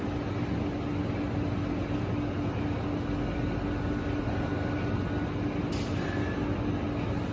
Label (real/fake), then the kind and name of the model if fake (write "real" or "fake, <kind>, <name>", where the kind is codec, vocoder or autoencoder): real